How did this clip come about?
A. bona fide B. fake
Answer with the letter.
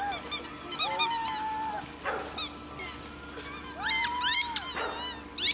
A